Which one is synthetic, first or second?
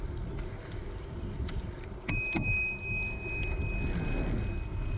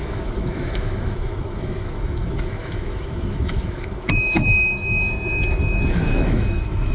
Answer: second